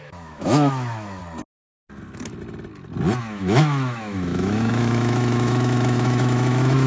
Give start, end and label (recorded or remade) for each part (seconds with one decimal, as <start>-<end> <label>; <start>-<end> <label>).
0.0-1.2 remade; 1.2-3.2 recorded; 3.2-6.9 remade